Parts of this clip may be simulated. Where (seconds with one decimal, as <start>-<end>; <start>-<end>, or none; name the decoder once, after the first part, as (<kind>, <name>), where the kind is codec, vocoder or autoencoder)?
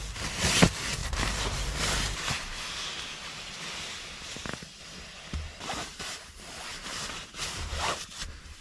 1.0-2.3 (vocoder, BigVGAN v2)